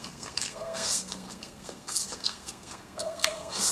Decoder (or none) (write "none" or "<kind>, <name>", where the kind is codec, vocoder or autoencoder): codec, SNAC